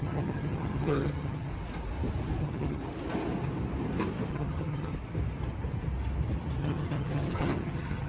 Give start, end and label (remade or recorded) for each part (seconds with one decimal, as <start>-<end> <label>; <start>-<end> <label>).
0.0-1.5 remade; 1.5-2.4 recorded; 2.4-2.8 remade; 2.8-4.3 recorded; 4.3-4.9 remade; 4.9-6.6 recorded; 6.6-8.1 remade